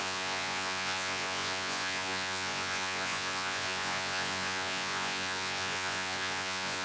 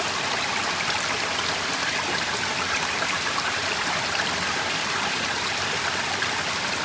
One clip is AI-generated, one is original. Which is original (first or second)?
second